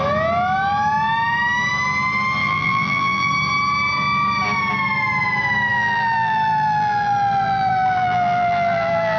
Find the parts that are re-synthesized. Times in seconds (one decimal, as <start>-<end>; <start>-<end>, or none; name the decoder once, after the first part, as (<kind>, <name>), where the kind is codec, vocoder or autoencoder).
2.4-3.3 (vocoder, BigVGAN v2); 5.7-9.2